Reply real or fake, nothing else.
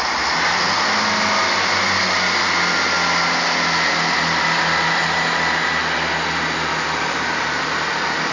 real